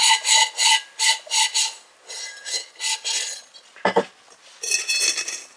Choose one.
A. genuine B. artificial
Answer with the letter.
A